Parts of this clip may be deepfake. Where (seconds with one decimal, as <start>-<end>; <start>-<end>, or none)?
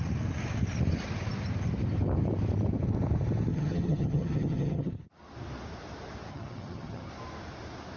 3.5-4.9; 6.3-7.1